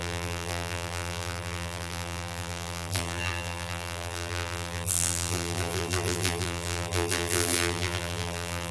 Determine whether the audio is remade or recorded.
remade